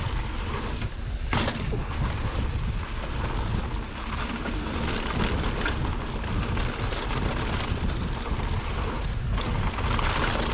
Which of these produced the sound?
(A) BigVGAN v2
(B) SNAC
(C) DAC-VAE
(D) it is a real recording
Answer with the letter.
D